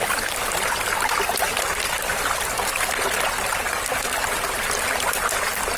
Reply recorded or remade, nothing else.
recorded